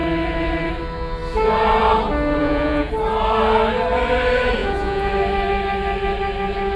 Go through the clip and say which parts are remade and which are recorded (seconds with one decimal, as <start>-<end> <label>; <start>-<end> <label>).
0.0-2.4 recorded; 2.4-2.9 remade; 2.9-4.6 recorded; 4.6-5.1 remade; 5.1-6.8 recorded